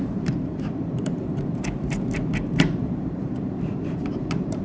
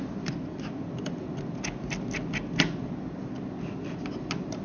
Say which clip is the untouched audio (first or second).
second